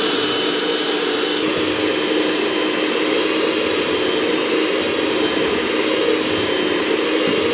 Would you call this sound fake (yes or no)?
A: no